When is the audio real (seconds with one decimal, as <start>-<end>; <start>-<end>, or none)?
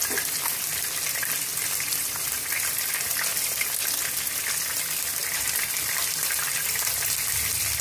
0.0-1.5; 2.7-7.8